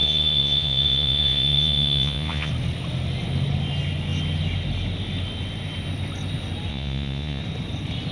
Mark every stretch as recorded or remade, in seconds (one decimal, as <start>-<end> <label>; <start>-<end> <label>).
0.0-2.5 remade; 2.5-6.7 recorded; 6.7-7.4 remade; 7.4-8.1 recorded